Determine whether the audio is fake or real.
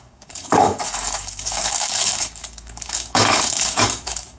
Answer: fake